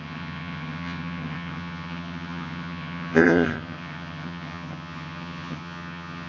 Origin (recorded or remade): remade